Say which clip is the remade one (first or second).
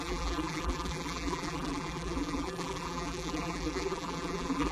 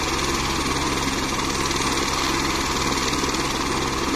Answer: first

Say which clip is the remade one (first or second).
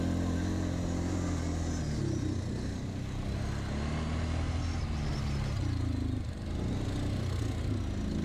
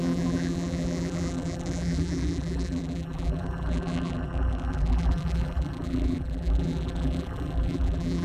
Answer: second